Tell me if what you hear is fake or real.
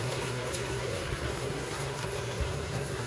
fake